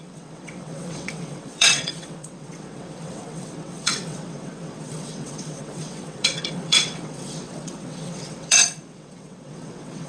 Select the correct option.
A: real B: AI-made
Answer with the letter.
B